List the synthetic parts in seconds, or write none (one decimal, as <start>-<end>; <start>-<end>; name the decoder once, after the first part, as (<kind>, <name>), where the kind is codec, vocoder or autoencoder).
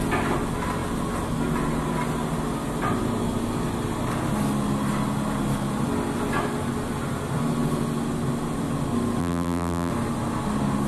9.2-9.9 (vocoder, BigVGAN v2)